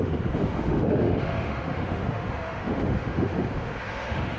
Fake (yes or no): yes